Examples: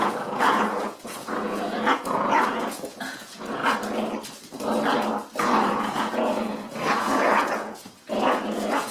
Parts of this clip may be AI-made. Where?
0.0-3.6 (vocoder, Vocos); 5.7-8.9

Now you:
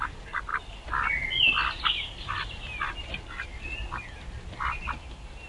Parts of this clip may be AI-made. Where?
none